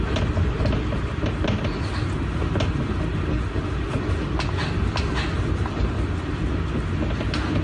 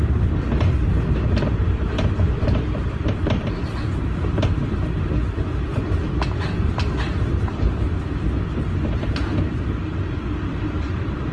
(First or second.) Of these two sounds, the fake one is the second